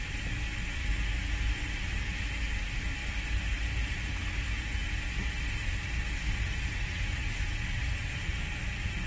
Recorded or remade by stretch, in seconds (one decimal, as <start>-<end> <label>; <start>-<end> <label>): 0.0-0.8 recorded; 0.8-2.0 remade; 2.0-3.0 recorded; 3.0-3.9 remade; 3.9-9.1 recorded